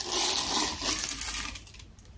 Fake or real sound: real